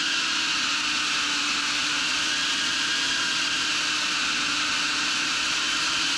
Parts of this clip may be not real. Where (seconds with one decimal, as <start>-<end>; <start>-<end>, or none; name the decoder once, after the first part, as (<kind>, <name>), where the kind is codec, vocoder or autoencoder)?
none